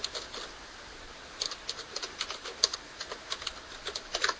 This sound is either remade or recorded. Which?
recorded